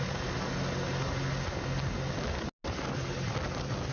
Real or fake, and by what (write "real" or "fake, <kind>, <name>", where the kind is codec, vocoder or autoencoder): real